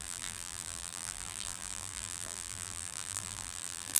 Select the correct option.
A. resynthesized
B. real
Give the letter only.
A